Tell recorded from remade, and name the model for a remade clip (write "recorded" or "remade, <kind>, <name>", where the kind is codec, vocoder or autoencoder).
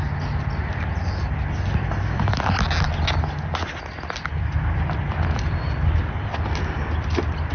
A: recorded